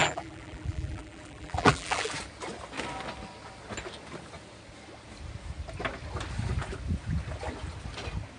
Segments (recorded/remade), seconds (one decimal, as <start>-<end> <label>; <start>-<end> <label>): 0.0-2.1 remade; 2.1-8.4 recorded